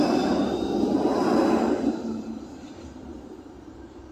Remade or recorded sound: remade